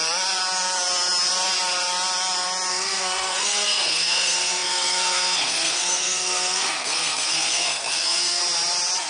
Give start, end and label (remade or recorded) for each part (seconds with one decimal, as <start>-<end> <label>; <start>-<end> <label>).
0.0-2.7 recorded; 2.7-8.4 remade; 8.4-9.1 recorded